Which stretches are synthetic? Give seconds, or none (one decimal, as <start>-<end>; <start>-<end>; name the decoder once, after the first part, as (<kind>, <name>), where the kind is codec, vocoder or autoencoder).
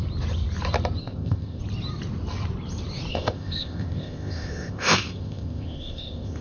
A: 1.0-1.6 (codec, ZipCodec); 3.1-6.4